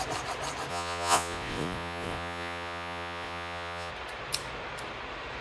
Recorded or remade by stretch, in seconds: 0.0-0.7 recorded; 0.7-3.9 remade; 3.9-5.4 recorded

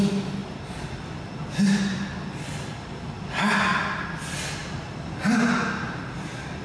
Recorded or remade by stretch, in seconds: 0.0-6.6 recorded

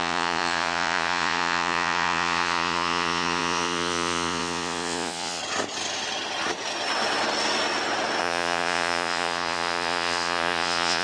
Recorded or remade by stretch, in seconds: 0.0-5.4 remade; 5.4-8.2 recorded; 8.2-11.0 remade

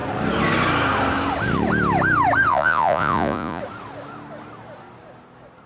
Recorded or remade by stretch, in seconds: 0.0-2.5 recorded; 2.5-3.6 remade; 3.6-5.7 recorded

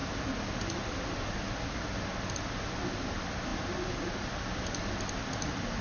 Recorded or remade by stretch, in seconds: 0.0-5.8 recorded

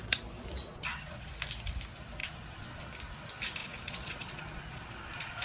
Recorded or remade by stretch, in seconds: 0.0-0.7 recorded; 0.7-1.3 remade; 1.3-2.2 recorded; 2.2-2.8 remade; 2.8-3.6 recorded; 3.6-5.4 remade